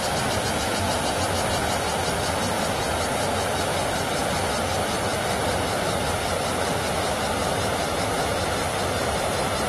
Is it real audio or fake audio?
real